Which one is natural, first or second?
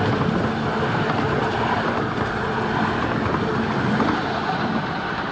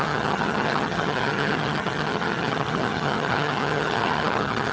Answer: first